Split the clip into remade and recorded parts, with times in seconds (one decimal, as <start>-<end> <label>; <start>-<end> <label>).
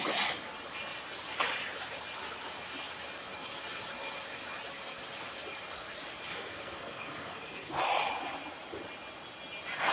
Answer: 0.0-6.3 recorded; 6.3-7.7 remade; 7.7-9.9 recorded